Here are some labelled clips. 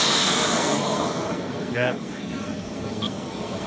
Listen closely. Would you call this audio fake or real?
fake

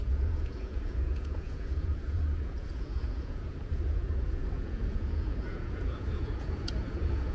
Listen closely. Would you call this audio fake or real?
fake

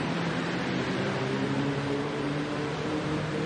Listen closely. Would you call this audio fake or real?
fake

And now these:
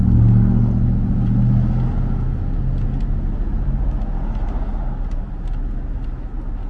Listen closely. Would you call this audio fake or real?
real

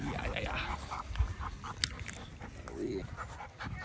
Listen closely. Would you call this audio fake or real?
real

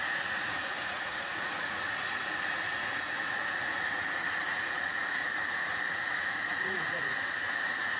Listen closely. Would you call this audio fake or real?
fake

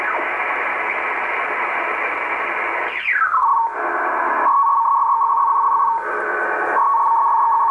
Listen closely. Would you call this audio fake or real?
real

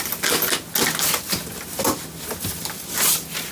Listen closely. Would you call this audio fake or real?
real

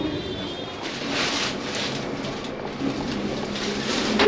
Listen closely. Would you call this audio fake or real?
real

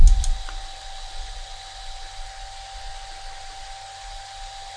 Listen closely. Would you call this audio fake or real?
real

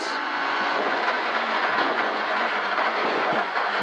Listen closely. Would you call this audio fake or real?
fake